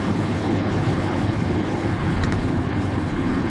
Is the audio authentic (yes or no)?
no